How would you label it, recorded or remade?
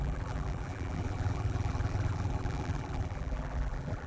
remade